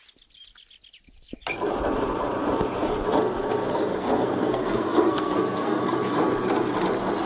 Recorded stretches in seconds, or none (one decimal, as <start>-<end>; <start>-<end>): 0.0-3.9; 5.8-7.3